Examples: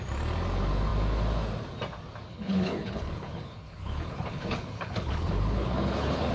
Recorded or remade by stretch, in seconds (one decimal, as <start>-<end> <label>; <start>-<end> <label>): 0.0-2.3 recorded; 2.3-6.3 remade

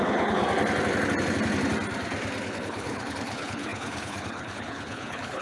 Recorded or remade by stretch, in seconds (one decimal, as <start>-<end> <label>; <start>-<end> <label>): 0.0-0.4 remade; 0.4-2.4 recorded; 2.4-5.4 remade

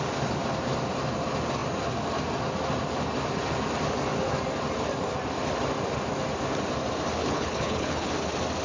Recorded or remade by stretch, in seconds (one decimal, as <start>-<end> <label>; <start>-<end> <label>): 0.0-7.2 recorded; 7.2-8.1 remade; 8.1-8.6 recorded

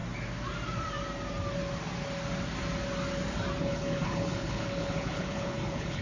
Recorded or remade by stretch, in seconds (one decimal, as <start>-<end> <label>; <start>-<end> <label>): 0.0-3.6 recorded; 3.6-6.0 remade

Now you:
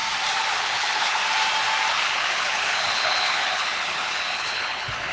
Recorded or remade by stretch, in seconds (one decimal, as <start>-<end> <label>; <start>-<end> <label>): 0.0-0.5 recorded; 0.5-1.2 remade; 1.2-1.9 recorded; 1.9-5.1 remade